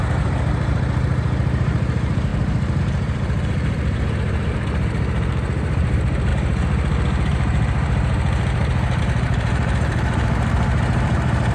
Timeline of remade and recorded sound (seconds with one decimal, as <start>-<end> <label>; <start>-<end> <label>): 0.0-2.3 remade; 2.3-2.8 recorded; 2.8-11.5 remade